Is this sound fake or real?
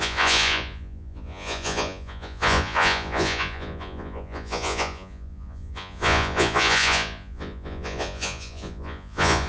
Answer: fake